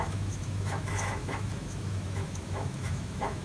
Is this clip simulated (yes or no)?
yes